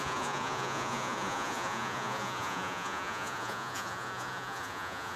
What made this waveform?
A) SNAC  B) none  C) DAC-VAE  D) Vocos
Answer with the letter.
D